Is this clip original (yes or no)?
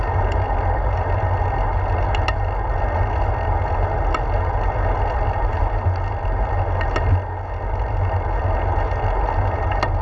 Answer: yes